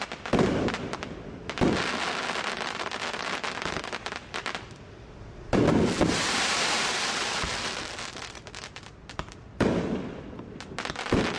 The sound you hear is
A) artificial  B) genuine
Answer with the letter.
B